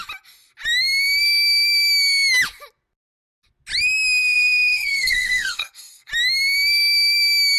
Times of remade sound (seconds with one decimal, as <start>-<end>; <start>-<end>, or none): 4.2-6.1